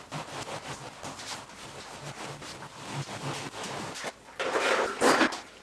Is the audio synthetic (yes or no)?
no